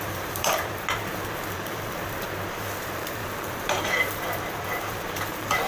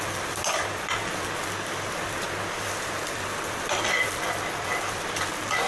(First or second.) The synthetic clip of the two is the first